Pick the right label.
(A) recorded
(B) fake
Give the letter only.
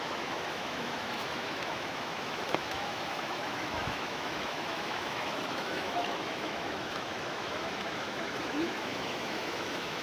B